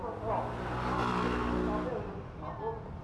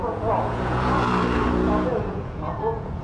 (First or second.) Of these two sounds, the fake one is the second